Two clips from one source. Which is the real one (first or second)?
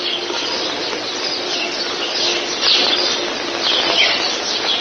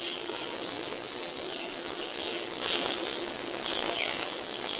first